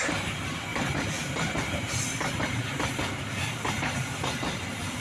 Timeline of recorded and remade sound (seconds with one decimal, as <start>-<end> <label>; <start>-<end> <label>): 0.0-5.0 recorded